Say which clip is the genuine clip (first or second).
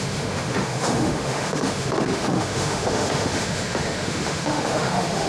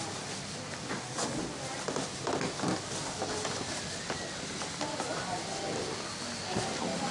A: second